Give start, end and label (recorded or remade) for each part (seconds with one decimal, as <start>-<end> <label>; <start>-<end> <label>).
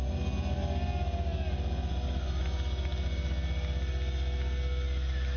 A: 0.0-5.4 recorded